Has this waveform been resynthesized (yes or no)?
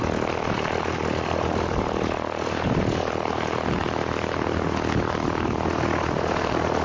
no